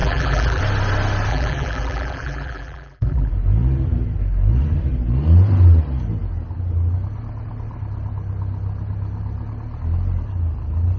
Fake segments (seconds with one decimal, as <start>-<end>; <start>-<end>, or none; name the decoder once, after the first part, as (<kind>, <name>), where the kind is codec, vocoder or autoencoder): 0.0-0.6 (vocoder, BigVGAN v2); 1.3-3.3